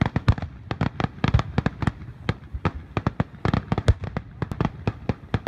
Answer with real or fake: real